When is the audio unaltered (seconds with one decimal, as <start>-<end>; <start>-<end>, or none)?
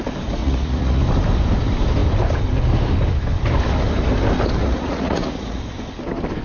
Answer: 0.0-0.4; 1.0-4.6; 5.6-6.4